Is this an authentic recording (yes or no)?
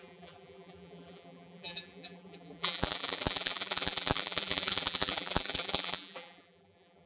no